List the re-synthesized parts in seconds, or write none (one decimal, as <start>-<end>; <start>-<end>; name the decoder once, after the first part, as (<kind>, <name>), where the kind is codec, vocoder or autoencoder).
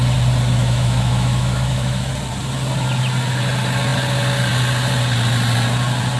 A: 0.6-2.1 (autoencoder, DAC-VAE)